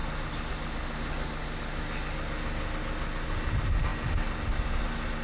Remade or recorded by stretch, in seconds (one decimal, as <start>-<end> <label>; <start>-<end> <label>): 0.0-5.2 recorded